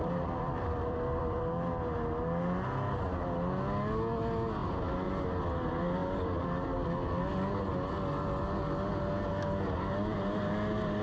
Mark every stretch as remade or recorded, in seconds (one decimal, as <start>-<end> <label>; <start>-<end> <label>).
0.0-1.4 remade; 1.4-11.0 recorded